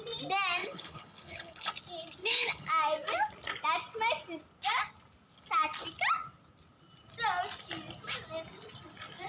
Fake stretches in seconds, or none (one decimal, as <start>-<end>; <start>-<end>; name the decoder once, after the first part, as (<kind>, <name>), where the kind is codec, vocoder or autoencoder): 0.6-1.7 (codec, HILCodec); 2.2-2.7